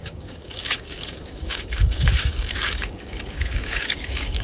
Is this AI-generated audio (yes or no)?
yes